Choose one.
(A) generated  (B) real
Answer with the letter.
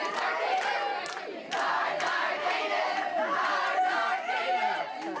B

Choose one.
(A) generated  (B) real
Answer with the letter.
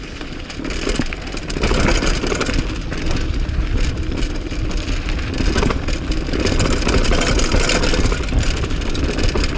B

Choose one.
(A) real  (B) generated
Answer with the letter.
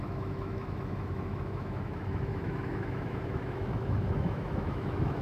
B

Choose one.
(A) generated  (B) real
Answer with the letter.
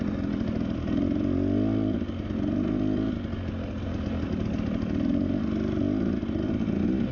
B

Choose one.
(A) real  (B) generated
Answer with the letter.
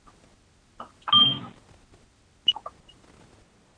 A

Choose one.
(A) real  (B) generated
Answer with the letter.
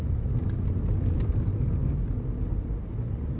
A